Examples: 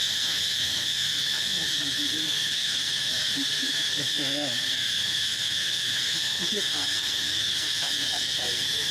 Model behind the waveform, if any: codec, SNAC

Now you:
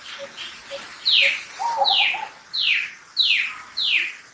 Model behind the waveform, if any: none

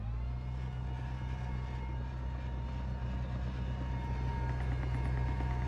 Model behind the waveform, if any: none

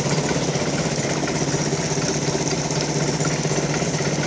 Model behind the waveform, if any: none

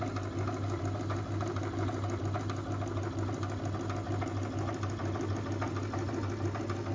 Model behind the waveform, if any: none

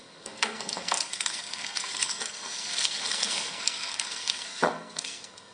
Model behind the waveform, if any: codec, SNAC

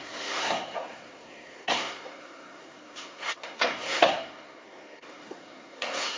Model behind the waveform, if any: codec, SNAC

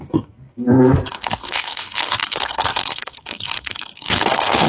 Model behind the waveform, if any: codec, SNAC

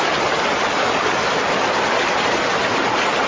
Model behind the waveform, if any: none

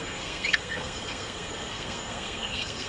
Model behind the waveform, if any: codec, SNAC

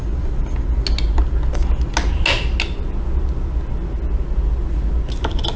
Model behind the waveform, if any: none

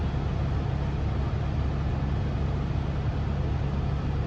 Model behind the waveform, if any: none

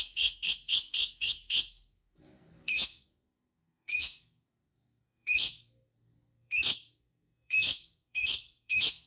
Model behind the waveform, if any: codec, SNAC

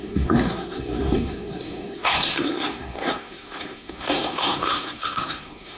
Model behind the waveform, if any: codec, SNAC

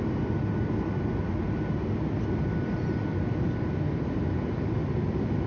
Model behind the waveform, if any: none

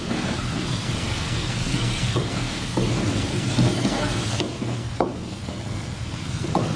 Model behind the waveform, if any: codec, SNAC